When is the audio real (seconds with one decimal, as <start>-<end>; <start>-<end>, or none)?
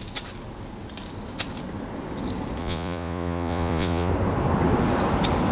0.0-2.6; 4.1-5.5